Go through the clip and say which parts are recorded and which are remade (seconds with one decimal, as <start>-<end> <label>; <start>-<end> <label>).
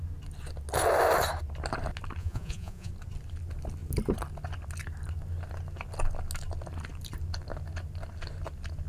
0.0-2.2 recorded; 2.2-2.9 remade; 2.9-8.9 recorded